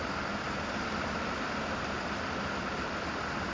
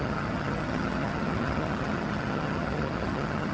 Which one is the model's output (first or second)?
second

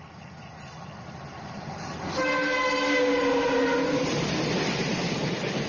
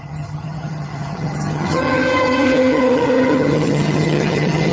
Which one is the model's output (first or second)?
second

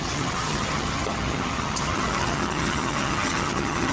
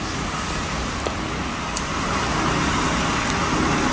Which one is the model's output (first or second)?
first